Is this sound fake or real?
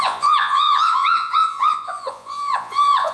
fake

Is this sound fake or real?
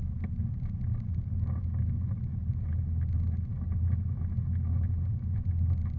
real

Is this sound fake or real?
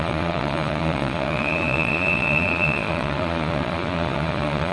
fake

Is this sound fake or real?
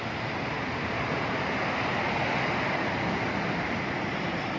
real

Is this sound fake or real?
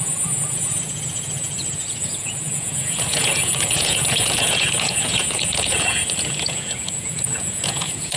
fake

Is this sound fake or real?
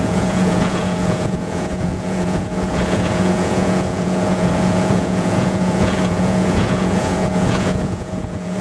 fake